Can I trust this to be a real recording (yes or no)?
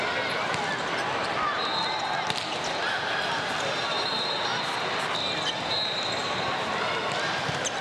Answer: yes